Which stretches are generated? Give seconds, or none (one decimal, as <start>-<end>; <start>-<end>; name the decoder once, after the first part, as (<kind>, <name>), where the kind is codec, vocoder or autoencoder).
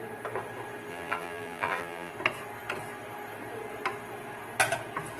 0.9-2.1 (vocoder, BigVGAN v2)